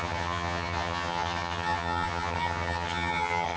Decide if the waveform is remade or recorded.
remade